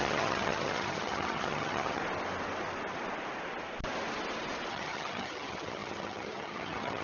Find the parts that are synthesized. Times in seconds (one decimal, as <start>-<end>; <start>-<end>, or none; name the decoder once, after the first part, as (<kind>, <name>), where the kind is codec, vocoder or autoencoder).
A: 0.0-2.0 (vocoder, HiFi-GAN); 4.7-7.0

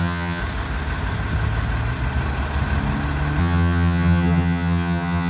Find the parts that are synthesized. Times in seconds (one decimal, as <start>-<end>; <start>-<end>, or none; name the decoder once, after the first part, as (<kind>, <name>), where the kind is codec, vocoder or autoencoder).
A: 0.0-0.4 (vocoder, HiFi-GAN); 3.4-5.3